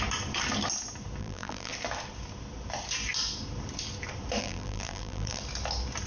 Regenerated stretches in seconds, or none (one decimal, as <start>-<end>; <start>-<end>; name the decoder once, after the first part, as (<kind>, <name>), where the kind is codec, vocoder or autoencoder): 1.2-1.7 (vocoder, BigVGAN v2); 4.4-5.4